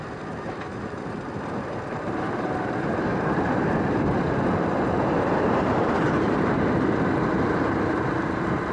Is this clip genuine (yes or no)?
no